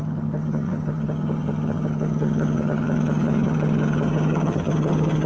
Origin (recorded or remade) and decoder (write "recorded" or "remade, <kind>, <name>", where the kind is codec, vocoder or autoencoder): remade, vocoder, HiFi-GAN